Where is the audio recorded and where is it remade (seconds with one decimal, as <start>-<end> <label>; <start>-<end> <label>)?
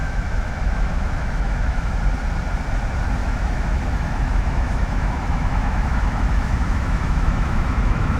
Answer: 0.0-1.9 remade; 1.9-3.2 recorded; 3.2-8.2 remade